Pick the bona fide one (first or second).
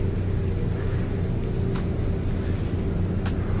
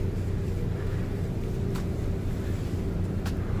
first